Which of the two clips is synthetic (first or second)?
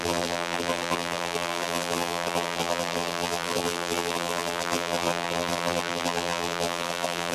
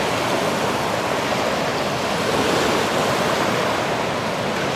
first